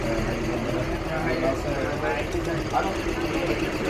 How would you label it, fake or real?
real